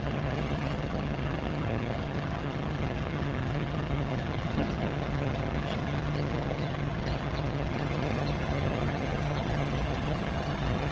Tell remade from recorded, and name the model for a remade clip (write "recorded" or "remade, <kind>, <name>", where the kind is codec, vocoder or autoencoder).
remade, vocoder, HiFi-GAN